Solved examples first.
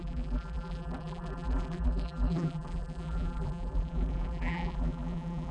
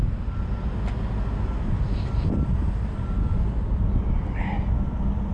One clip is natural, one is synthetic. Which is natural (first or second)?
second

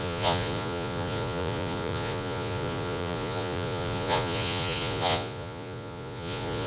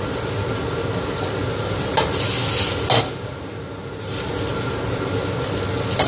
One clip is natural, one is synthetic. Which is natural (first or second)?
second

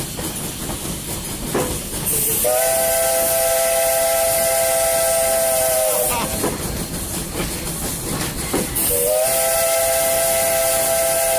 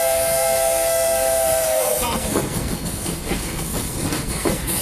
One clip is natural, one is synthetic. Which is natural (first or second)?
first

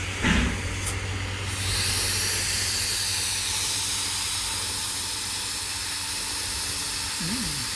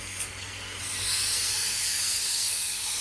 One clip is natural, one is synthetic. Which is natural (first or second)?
first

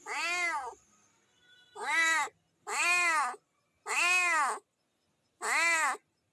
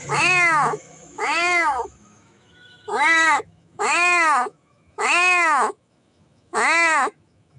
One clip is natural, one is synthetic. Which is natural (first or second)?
first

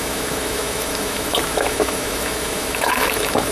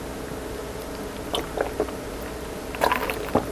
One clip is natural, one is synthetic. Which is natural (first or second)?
second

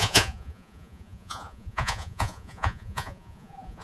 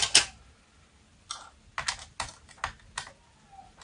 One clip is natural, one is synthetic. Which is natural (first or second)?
second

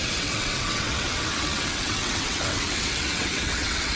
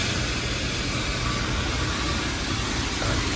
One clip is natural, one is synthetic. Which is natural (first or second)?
second